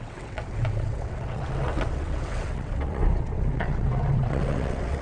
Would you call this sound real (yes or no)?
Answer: no